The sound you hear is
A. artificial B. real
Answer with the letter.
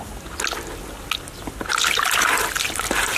B